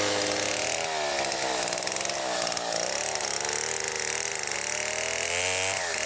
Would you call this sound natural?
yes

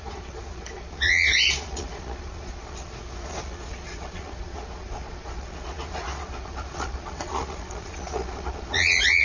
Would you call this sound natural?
no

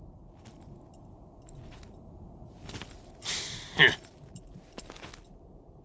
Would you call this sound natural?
yes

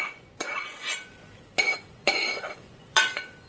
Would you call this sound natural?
no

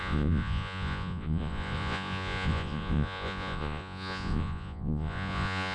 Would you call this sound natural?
no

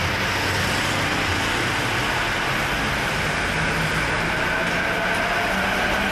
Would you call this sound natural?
yes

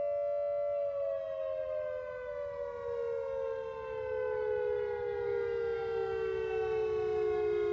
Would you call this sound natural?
yes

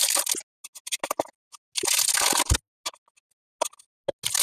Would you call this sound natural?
yes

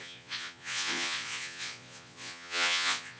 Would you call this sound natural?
no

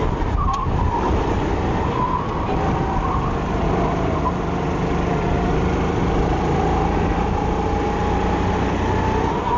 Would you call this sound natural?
yes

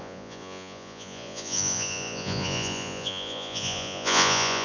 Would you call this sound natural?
no